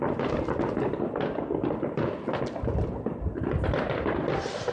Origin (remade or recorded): recorded